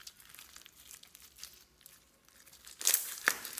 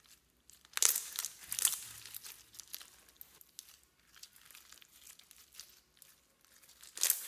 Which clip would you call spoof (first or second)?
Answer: first